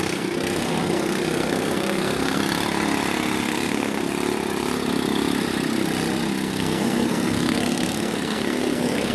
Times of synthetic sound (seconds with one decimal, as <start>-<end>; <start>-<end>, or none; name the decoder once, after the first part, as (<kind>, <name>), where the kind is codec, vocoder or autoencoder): 0.0-2.4 (codec, SNAC); 3.4-4.0; 6.3-9.1